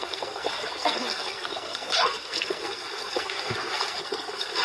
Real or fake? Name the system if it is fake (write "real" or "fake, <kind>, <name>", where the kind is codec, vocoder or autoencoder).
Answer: fake, codec, SNAC